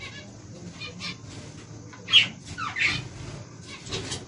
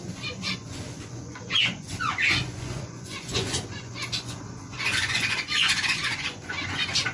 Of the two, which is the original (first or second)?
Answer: first